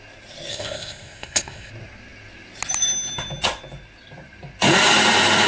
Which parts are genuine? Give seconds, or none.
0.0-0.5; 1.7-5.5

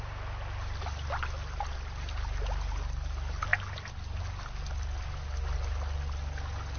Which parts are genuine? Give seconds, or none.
0.0-6.8